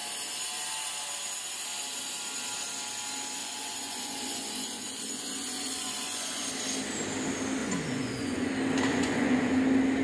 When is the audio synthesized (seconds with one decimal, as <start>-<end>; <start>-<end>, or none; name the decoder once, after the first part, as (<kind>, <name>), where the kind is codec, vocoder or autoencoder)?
3.4-6.5 (vocoder, Vocos); 7.6-8.5; 8.9-9.6